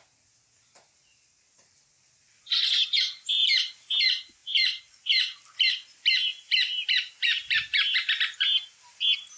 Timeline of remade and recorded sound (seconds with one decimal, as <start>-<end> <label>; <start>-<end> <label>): 0.0-3.4 recorded; 3.4-4.0 remade; 4.0-6.3 recorded; 6.3-9.0 remade; 9.0-9.4 recorded